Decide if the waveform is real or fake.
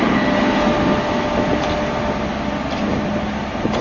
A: real